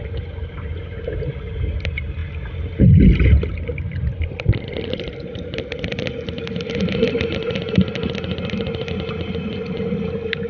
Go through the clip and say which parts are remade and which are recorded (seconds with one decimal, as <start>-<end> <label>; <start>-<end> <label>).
0.0-10.5 recorded